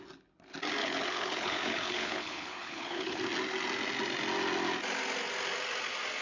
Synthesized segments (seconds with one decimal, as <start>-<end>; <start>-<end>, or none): 0.8-3.2